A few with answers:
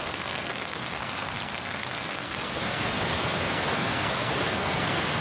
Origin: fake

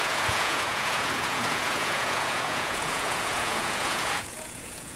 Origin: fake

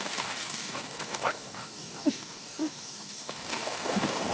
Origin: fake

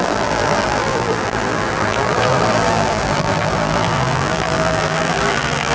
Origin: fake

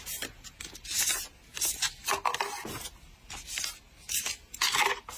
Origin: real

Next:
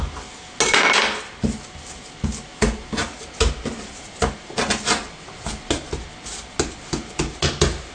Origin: real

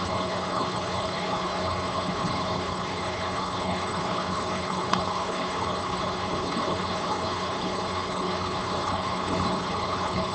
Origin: fake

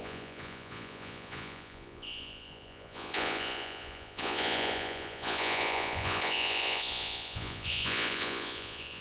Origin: fake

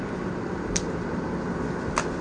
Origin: real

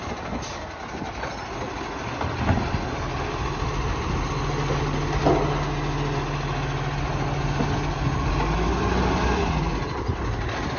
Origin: real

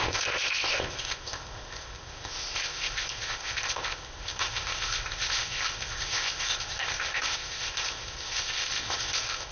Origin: fake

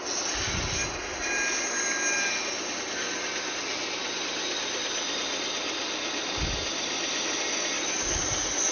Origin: real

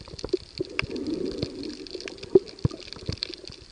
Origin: real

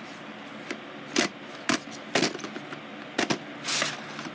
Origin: real